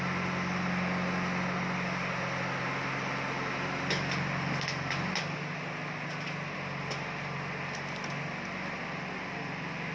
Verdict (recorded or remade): recorded